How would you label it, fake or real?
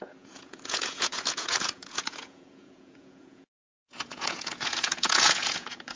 fake